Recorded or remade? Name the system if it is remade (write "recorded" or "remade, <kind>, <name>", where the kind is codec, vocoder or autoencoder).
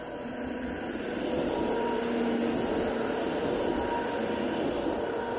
recorded